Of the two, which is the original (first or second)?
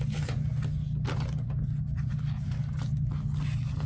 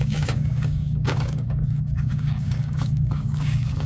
first